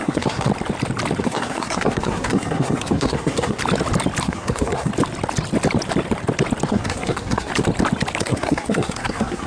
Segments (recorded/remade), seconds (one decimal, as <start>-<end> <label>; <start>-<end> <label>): 0.0-0.5 remade; 0.5-1.2 recorded; 1.2-3.6 remade; 3.6-4.2 recorded; 4.2-4.9 remade; 4.9-6.7 recorded; 6.7-7.5 remade; 7.5-8.2 recorded; 8.2-9.5 remade